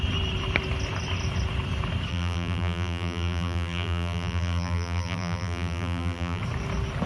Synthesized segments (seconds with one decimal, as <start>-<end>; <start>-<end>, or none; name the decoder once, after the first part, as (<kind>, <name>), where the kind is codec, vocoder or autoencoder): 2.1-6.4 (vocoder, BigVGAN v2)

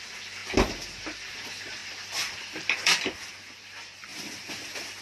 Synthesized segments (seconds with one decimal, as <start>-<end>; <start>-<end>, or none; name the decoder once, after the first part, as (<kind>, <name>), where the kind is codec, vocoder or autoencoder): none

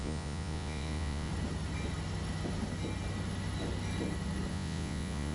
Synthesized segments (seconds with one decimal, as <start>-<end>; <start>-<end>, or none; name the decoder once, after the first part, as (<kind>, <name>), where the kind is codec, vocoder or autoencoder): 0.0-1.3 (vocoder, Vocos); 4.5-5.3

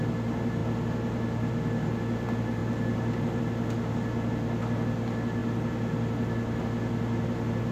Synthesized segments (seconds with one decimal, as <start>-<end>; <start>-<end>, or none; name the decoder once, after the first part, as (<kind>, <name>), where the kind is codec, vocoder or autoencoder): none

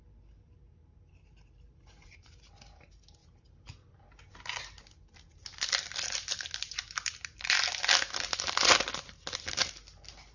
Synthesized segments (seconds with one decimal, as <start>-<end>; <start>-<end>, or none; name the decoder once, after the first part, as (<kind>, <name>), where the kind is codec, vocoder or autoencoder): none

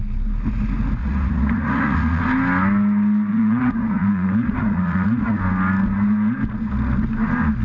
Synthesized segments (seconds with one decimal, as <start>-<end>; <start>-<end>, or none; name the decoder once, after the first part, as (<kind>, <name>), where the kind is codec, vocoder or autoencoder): 1.0-2.2 (vocoder, Vocos); 3.3-5.4

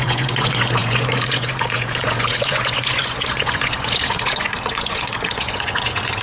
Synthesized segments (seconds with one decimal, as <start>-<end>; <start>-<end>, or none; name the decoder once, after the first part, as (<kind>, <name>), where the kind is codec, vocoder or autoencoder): 0.0-6.2 (vocoder, Vocos)

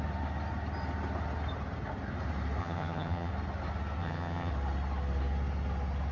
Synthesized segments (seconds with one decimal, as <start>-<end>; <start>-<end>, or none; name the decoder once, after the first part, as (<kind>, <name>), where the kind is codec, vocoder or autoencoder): 2.6-3.3 (vocoder, HiFi-GAN); 4.0-4.5